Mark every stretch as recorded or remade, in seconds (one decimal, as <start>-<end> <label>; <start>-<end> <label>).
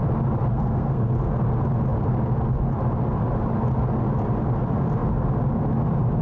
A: 0.0-0.5 recorded; 0.5-1.1 remade; 1.1-6.2 recorded